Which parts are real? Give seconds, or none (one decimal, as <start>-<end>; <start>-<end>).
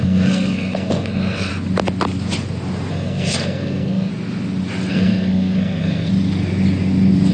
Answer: 1.5-2.9; 4.1-4.9; 6.1-7.3